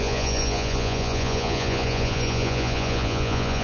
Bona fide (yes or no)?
no